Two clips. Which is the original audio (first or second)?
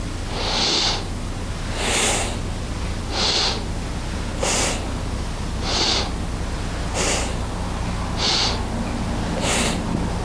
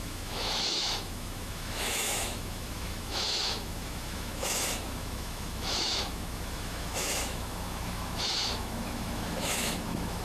first